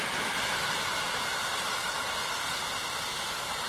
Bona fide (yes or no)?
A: yes